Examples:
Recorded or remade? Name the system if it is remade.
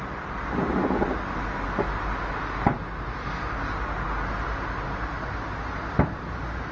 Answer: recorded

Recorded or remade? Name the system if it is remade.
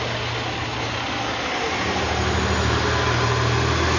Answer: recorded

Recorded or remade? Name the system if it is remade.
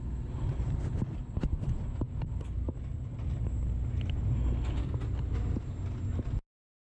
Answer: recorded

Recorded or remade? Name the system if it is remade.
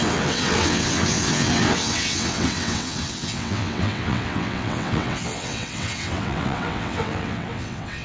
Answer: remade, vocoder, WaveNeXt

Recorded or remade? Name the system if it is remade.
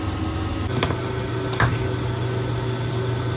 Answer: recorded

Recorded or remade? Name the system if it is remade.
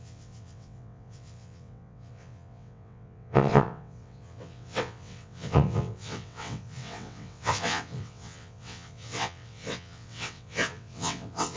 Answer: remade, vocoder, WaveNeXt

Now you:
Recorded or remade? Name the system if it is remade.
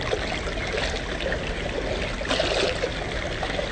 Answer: recorded